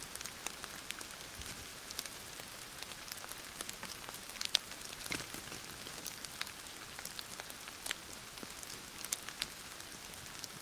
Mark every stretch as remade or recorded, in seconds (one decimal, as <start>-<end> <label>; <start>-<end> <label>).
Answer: 0.0-1.7 recorded; 1.7-5.0 remade; 5.0-10.6 recorded